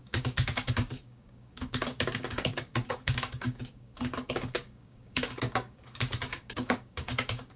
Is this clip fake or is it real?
fake